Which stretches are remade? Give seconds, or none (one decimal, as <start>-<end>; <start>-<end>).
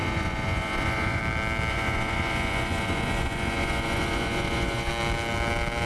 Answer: 0.0-1.2; 1.7-4.9